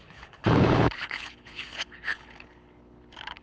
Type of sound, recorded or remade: remade